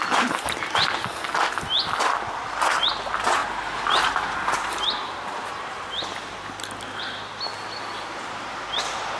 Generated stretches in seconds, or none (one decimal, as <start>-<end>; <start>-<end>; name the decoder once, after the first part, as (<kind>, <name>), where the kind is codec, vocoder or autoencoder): 3.4-7.0 (vocoder, BigVGAN v2); 7.5-8.5